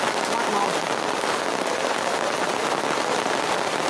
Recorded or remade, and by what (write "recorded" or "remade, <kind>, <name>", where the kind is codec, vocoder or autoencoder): recorded